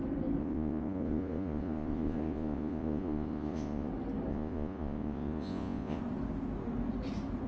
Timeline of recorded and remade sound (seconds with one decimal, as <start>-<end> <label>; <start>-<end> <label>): 0.0-0.4 recorded; 0.4-3.9 remade; 3.9-4.3 recorded; 4.3-6.0 remade; 6.0-7.5 recorded